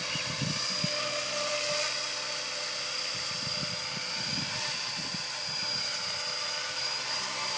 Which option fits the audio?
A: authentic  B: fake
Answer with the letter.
A